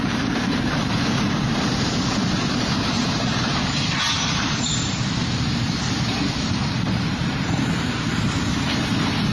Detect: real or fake fake